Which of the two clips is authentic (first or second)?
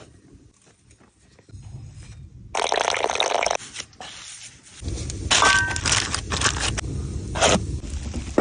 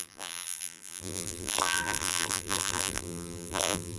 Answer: first